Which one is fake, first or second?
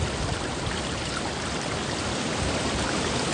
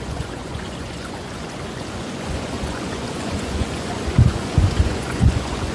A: second